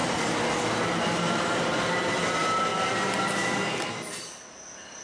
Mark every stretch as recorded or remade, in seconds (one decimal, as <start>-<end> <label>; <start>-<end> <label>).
0.0-5.0 recorded